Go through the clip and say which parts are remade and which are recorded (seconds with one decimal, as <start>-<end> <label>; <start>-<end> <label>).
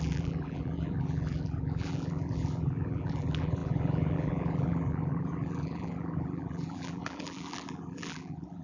0.0-8.6 remade